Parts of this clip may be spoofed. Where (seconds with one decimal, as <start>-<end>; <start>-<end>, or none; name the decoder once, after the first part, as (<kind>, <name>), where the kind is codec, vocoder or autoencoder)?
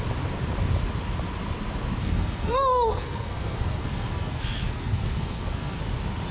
2.0-5.8 (codec, SNAC)